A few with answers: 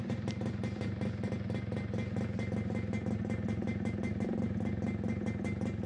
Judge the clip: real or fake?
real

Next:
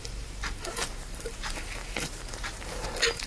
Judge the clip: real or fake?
fake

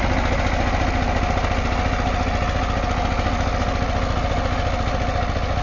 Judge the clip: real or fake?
real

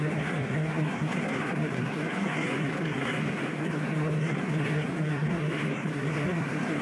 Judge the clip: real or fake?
fake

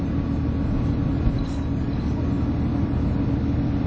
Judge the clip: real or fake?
real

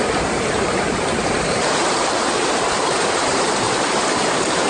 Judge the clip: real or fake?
fake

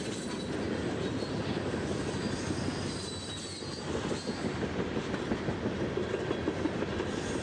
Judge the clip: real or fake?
real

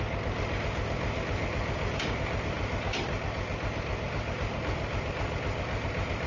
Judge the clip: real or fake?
real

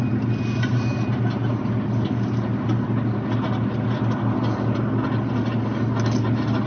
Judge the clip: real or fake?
real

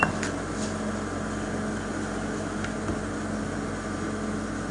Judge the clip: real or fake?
real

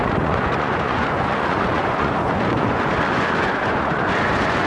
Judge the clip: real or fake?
fake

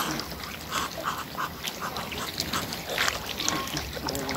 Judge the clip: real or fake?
real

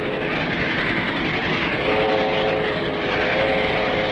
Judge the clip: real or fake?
real